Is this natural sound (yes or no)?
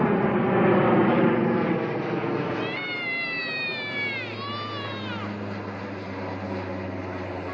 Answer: yes